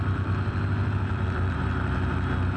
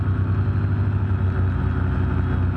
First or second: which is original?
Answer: second